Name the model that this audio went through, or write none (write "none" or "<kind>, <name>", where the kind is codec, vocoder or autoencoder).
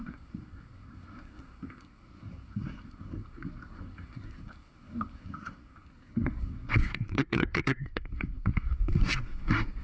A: codec, SNAC